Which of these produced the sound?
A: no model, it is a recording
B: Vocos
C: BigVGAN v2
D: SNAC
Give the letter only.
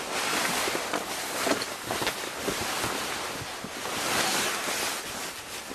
A